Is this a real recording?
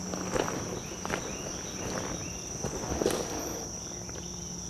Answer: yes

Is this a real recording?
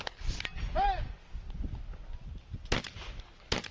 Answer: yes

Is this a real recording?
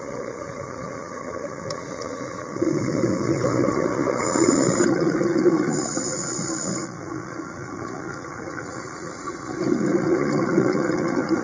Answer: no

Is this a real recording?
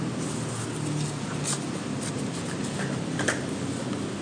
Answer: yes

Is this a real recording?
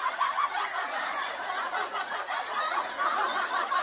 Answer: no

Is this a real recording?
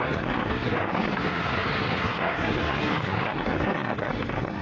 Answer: no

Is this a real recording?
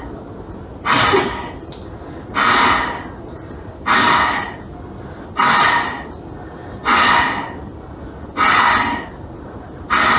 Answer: yes